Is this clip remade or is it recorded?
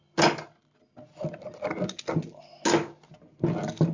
recorded